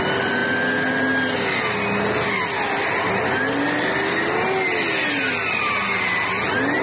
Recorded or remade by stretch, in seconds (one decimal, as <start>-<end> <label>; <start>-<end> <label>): 0.0-6.8 recorded